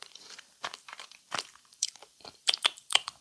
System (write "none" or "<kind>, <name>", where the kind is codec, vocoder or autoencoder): vocoder, BigVGAN v2